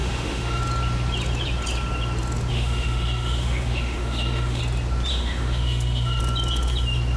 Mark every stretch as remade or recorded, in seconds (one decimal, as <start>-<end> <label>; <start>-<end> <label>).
0.0-0.6 remade; 0.6-2.5 recorded; 2.5-4.6 remade; 4.6-5.1 recorded; 5.1-6.2 remade; 6.2-7.2 recorded